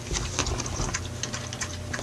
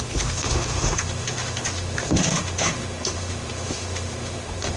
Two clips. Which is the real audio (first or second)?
first